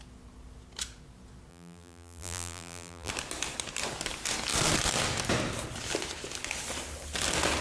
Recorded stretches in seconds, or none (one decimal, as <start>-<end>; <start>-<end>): 0.0-1.5; 3.1-7.6